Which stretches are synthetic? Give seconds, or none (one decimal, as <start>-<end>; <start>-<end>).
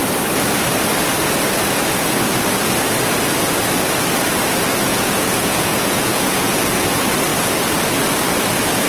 4.9-6.5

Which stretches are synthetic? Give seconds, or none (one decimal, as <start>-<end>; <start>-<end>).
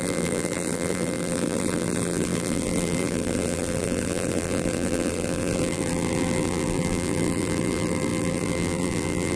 0.0-9.4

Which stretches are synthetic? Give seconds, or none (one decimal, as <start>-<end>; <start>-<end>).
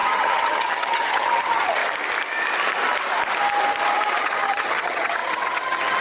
0.0-1.8; 4.2-6.0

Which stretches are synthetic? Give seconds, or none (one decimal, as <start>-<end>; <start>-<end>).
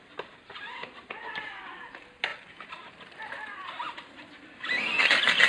0.0-1.9; 2.3-4.1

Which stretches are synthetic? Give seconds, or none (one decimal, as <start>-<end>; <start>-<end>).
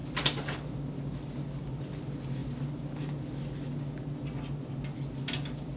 none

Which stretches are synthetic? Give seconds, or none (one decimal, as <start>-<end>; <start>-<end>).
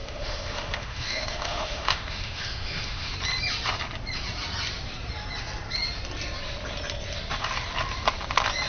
0.0-3.1